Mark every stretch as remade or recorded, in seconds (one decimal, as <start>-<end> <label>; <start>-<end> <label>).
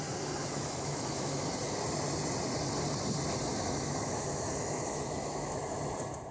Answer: 0.0-0.4 recorded; 0.4-1.5 remade; 1.5-3.5 recorded; 3.5-5.6 remade; 5.6-6.3 recorded